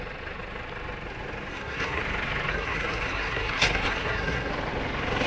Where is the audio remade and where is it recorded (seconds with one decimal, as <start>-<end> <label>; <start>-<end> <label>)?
0.0-1.5 recorded; 1.5-2.0 remade; 2.0-2.5 recorded; 2.5-4.5 remade; 4.5-5.3 recorded